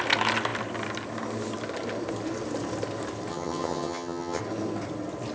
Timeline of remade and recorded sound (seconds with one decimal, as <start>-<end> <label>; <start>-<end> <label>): 0.0-3.3 recorded; 3.3-4.4 remade; 4.4-5.3 recorded